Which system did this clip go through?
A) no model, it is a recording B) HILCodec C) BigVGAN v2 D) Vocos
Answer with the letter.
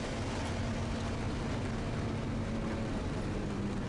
A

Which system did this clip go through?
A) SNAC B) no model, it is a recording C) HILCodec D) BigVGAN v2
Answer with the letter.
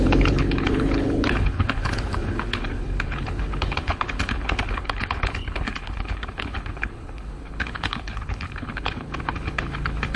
C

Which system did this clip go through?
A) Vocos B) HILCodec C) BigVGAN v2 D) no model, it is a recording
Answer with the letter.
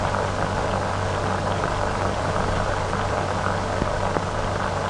D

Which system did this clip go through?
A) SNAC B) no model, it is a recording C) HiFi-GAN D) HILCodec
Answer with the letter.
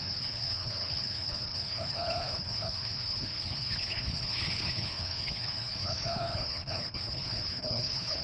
D